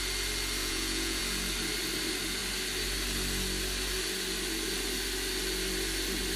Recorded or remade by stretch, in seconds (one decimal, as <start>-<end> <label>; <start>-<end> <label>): 0.0-0.6 recorded; 0.6-1.2 remade; 1.2-6.4 recorded